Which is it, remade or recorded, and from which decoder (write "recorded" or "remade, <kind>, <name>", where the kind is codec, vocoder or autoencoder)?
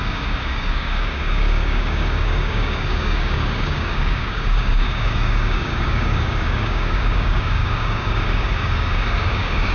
remade, codec, DAC